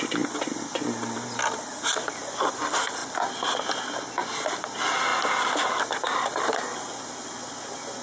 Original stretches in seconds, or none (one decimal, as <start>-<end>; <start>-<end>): 0.0-8.0